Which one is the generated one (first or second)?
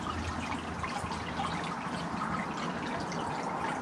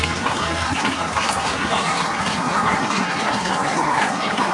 second